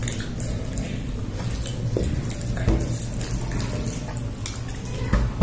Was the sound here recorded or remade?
recorded